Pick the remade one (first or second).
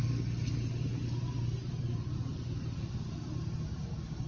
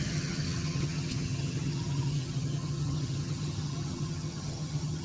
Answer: second